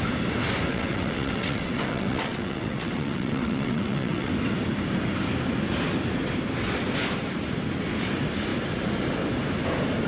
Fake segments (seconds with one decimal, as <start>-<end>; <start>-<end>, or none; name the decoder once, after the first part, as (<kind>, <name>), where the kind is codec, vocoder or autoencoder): 0.7-4.3 (vocoder, WaveNeXt)